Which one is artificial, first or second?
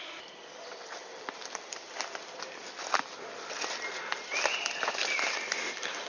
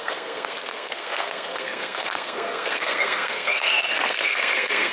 second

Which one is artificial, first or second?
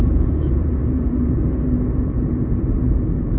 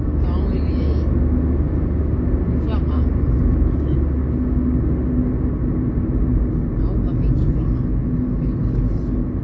first